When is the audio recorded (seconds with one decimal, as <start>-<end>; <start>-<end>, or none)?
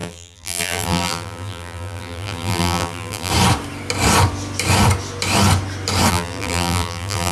3.3-6.1